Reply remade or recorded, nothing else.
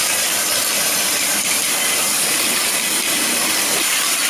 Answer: recorded